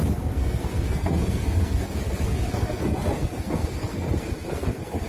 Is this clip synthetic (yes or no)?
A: yes